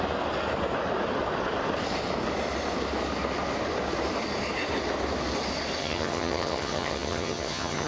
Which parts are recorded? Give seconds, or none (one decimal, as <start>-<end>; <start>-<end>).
0.0-5.8